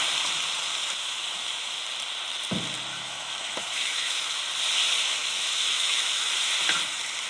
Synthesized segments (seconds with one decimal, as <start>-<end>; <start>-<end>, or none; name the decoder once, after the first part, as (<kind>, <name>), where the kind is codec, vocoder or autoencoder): 1.0-1.8 (autoencoder, DAC-VAE); 2.9-4.4; 5.2-6.3